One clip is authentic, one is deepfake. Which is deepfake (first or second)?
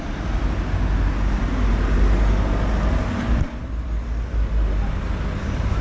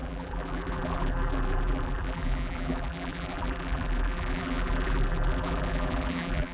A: second